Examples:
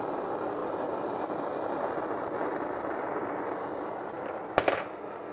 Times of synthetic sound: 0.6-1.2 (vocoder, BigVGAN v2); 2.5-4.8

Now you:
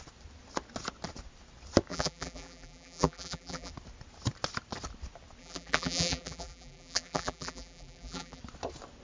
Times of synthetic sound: 1.9-3.7 (vocoder, BigVGAN v2); 5.4-8.4

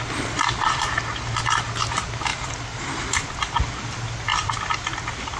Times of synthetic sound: 2.3-3.5 (vocoder, BigVGAN v2); 4.3-5.0

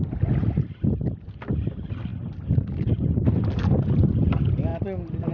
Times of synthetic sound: none